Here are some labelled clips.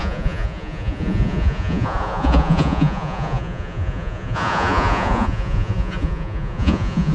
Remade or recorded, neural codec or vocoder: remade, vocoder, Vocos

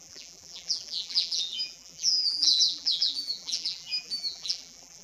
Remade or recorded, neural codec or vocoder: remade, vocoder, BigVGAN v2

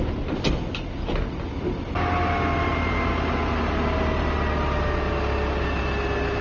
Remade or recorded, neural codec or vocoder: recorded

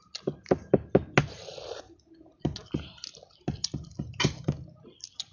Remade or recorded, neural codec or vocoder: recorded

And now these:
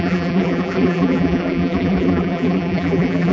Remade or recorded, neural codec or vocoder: remade, vocoder, BigVGAN v2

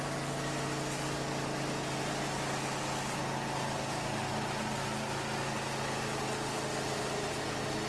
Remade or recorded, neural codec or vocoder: recorded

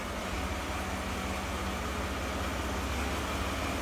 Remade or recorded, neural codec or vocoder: recorded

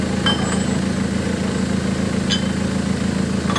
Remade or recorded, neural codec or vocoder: recorded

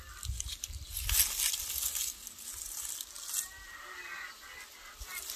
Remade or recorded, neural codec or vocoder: recorded